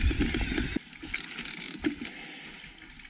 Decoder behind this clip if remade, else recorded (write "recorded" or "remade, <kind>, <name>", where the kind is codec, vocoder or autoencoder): recorded